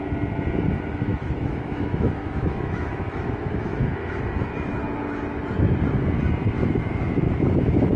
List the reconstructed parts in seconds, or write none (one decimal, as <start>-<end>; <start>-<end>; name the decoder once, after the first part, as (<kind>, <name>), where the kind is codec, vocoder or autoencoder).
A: 1.1-4.2 (autoencoder, DAC-VAE); 6.6-8.0